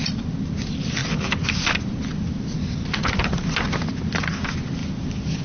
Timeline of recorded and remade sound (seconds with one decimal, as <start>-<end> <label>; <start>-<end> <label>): 0.0-5.4 recorded